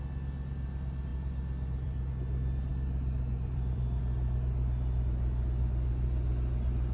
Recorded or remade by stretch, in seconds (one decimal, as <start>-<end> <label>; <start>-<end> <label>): 0.0-1.1 recorded; 1.1-2.1 remade; 2.1-2.7 recorded; 2.7-4.0 remade; 4.0-6.9 recorded